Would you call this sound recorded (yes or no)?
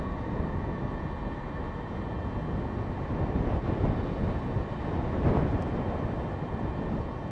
yes